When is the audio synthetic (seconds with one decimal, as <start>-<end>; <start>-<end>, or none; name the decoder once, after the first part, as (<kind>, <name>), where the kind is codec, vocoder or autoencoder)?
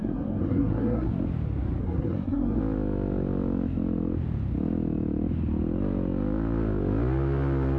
0.0-1.1 (codec, SNAC); 1.8-2.6